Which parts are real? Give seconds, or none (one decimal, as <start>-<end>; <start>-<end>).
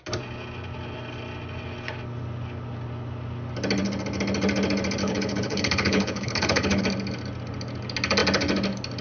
0.0-5.0; 6.8-9.0